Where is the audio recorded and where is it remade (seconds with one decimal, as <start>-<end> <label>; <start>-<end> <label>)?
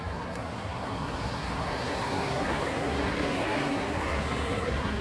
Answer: 0.0-5.0 remade